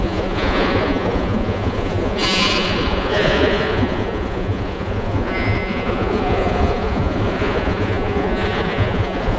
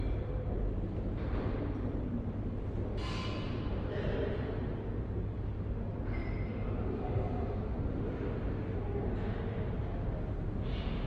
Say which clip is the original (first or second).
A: second